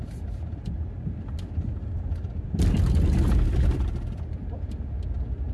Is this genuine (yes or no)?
yes